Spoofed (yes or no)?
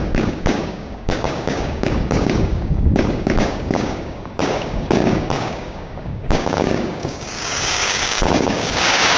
yes